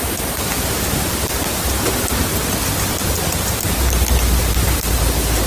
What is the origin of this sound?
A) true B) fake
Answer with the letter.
A